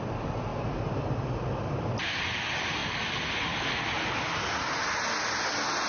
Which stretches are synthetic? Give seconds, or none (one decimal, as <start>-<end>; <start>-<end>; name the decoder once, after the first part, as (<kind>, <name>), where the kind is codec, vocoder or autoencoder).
none